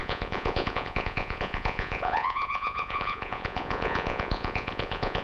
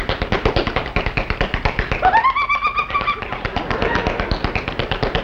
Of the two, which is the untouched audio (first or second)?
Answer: second